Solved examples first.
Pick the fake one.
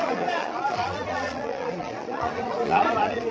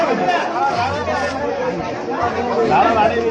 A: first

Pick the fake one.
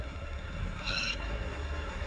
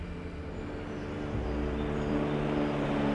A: first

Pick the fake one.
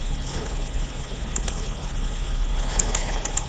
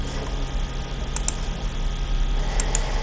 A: first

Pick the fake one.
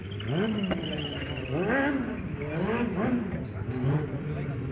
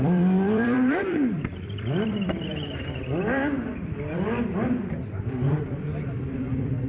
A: second